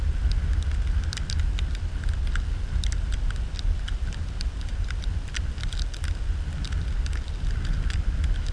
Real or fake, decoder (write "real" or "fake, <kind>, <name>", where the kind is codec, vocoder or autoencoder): real